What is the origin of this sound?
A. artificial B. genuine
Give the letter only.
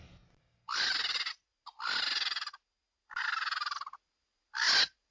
B